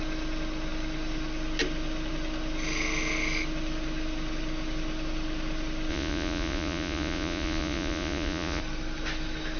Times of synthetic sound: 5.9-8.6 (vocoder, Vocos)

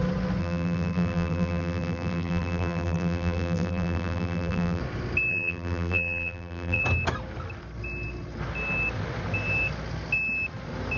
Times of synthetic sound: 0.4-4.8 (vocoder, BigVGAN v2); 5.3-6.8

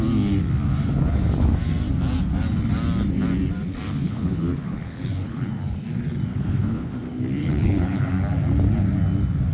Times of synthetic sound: 4.0-5.5 (codec, HILCodec); 6.3-6.9; 7.4-8.1

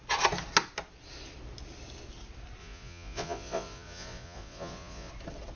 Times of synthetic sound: 2.6-5.1 (vocoder, Vocos)